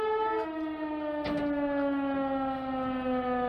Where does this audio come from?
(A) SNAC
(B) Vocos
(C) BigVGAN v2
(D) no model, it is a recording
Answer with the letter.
D